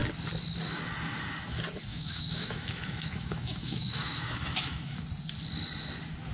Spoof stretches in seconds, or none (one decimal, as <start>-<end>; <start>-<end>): 1.9-5.0